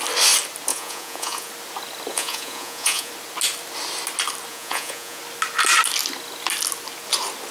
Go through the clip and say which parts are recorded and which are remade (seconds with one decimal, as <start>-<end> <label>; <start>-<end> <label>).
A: 0.0-0.7 recorded; 0.7-1.5 remade; 1.5-2.1 recorded; 2.1-3.1 remade; 3.1-4.5 recorded; 4.5-5.2 remade; 5.2-7.5 recorded